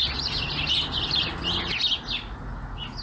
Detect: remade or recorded recorded